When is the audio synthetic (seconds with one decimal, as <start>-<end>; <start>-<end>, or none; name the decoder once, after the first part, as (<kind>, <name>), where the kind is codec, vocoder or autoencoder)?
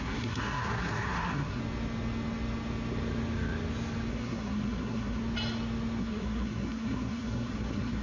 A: 0.0-1.6 (codec, SNAC); 4.1-5.2; 6.0-8.0